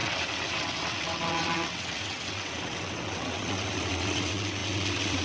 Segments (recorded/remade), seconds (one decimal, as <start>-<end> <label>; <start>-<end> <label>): 0.0-5.2 remade